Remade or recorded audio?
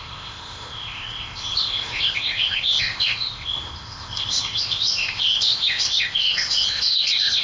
remade